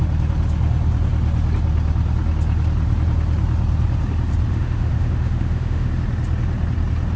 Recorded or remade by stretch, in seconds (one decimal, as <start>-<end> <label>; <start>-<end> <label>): 0.0-4.5 recorded; 4.5-5.9 remade; 5.9-7.2 recorded